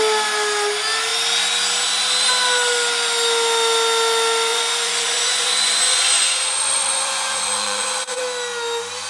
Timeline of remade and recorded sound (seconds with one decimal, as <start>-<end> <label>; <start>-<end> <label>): 0.0-4.5 recorded; 4.5-8.2 remade; 8.2-9.1 recorded